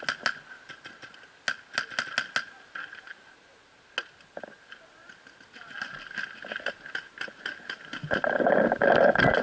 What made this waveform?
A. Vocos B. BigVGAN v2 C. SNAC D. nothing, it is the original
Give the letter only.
D